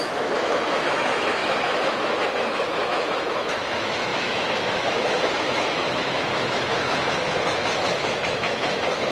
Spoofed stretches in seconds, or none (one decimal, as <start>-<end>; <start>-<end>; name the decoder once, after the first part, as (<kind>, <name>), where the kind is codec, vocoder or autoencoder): 0.0-9.1 (autoencoder, DAC-VAE)